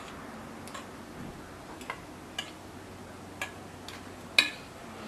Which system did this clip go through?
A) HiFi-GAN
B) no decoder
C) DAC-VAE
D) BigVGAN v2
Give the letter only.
B